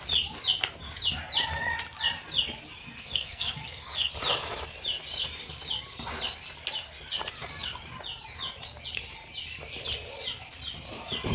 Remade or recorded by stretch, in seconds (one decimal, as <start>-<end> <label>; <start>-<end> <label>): 0.0-2.8 recorded; 2.8-4.1 remade; 4.1-11.3 recorded